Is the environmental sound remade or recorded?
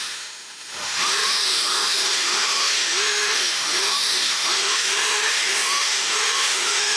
remade